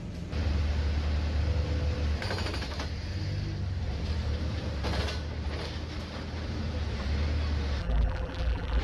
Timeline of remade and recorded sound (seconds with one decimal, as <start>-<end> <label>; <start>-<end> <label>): 0.0-7.8 recorded; 7.8-8.8 remade